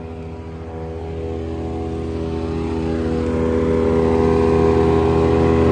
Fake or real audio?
real